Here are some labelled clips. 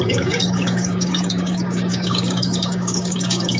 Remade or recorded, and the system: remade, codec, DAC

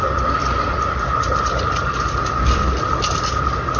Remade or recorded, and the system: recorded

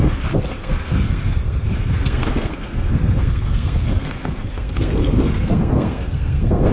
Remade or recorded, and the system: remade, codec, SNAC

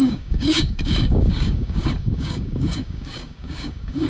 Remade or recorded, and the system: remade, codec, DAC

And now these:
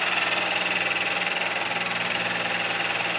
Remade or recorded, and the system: recorded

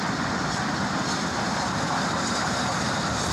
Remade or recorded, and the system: recorded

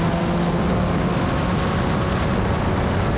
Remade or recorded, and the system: recorded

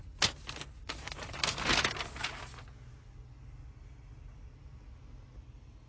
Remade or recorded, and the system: recorded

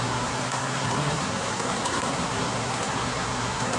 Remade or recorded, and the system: remade, codec, SNAC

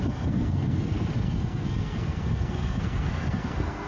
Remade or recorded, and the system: remade, codec, SNAC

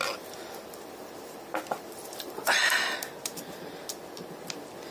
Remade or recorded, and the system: recorded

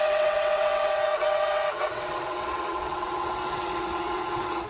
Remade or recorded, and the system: remade, vocoder, WaveNeXt